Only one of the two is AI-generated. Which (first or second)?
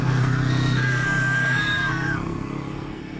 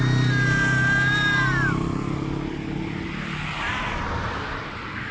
first